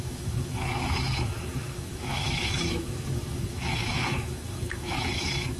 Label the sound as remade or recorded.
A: remade